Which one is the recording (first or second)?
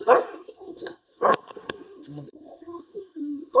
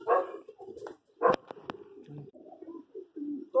second